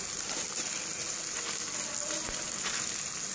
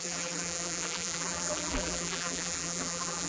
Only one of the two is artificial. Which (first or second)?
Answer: second